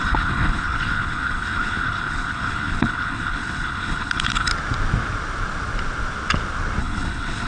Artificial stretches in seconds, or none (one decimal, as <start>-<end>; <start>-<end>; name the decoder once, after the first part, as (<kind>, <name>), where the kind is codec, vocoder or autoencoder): 0.0-4.5 (codec, HILCodec); 6.8-7.5